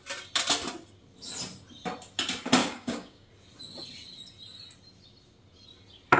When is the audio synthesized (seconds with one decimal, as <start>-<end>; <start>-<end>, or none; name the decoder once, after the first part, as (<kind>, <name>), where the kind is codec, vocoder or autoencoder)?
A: 2.6-3.3 (codec, DAC)